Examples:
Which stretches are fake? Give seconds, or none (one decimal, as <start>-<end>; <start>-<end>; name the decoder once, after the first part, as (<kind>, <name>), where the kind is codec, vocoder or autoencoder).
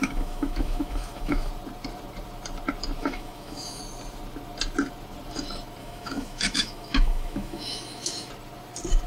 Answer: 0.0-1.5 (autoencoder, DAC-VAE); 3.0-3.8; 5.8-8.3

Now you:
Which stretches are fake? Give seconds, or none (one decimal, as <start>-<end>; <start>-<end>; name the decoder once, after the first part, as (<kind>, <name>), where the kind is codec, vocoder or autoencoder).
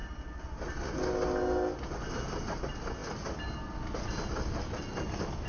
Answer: none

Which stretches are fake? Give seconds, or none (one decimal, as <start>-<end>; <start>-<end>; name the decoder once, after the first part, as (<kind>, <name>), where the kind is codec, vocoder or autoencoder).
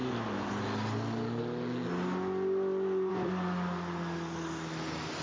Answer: none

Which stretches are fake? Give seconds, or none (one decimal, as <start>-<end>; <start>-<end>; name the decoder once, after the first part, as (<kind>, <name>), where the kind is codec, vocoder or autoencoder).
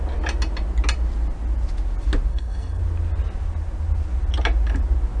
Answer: 2.3-2.8 (codec, SNAC)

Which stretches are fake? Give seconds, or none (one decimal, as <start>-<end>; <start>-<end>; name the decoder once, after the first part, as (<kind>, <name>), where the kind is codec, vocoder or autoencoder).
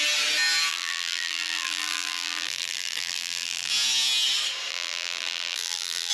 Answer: 0.7-3.7 (vocoder, BigVGAN v2); 4.7-6.1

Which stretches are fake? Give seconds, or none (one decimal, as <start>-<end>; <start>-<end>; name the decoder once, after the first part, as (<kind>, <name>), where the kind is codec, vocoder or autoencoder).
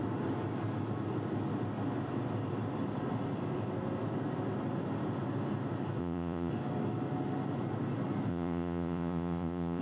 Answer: 6.0-6.5 (vocoder, Vocos); 8.3-9.8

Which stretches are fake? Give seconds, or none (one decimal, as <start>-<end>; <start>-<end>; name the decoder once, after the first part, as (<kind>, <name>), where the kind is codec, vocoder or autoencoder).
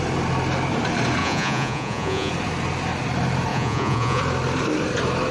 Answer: 1.2-2.3 (vocoder, Vocos); 3.5-4.2